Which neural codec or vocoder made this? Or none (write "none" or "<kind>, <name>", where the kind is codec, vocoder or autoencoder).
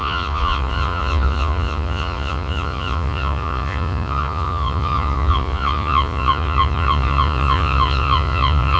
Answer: vocoder, Vocos